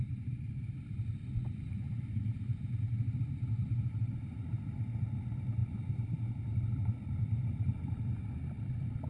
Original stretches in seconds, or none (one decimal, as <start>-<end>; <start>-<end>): 0.0-9.1